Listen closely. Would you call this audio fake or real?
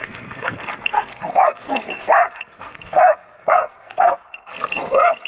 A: fake